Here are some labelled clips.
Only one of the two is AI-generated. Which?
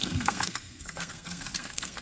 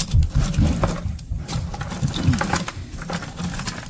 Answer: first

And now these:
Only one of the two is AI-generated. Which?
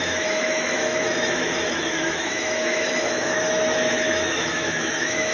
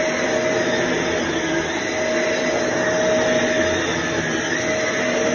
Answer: first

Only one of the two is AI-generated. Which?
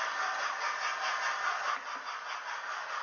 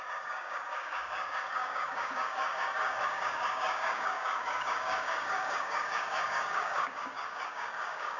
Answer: second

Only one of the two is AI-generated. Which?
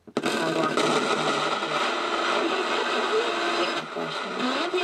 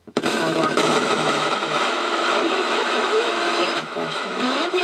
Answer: second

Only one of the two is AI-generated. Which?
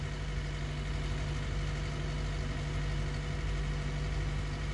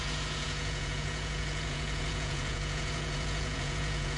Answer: second